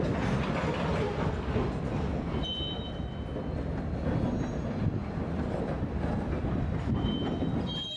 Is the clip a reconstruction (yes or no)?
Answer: no